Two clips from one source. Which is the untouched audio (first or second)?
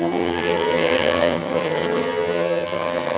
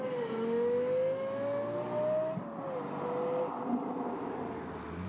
second